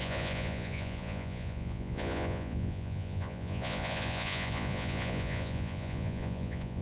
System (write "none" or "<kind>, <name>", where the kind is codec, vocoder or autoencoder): vocoder, Vocos